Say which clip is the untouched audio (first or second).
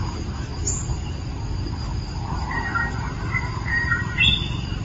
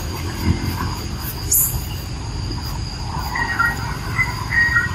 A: second